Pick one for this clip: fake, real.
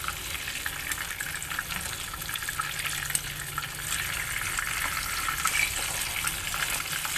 real